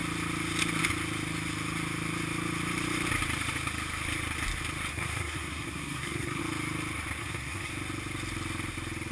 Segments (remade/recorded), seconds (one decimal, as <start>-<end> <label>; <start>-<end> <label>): 0.0-4.9 recorded; 4.9-6.4 remade; 6.4-7.2 recorded; 7.2-7.7 remade; 7.7-9.1 recorded